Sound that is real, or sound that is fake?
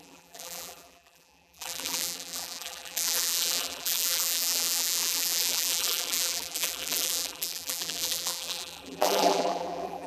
fake